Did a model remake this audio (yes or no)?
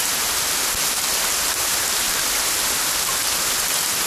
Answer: no